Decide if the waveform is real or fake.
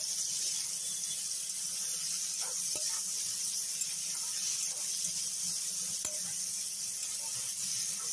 real